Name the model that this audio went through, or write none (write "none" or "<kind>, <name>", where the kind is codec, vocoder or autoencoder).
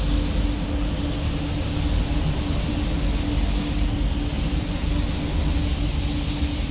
none